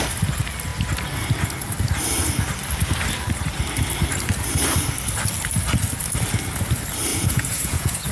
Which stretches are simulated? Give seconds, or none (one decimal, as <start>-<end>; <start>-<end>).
7.1-8.1